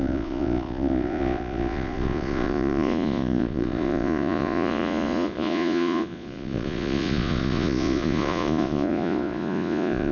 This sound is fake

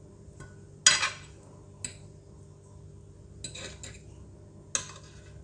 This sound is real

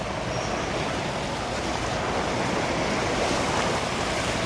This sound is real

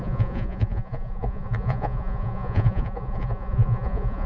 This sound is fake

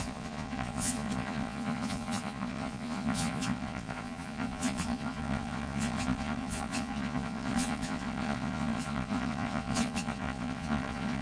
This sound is fake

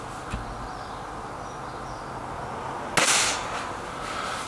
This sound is real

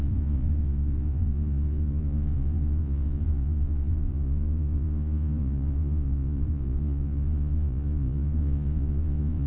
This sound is fake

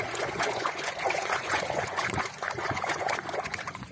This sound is fake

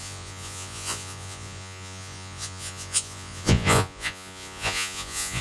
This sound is fake